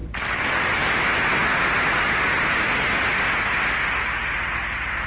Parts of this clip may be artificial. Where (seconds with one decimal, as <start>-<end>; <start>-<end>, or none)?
0.0-0.8